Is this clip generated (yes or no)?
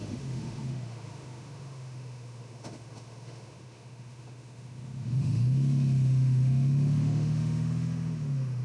yes